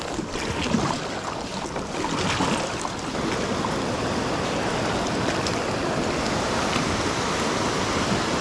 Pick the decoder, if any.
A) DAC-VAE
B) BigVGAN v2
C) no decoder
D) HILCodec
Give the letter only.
C